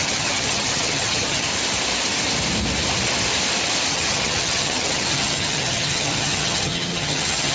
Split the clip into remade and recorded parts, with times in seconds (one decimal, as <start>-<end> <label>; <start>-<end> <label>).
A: 0.0-1.5 remade; 1.5-3.9 recorded; 3.9-7.5 remade